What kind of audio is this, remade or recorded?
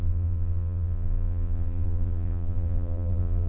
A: remade